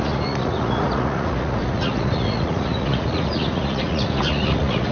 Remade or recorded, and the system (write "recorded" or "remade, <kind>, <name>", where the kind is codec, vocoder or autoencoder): remade, vocoder, Vocos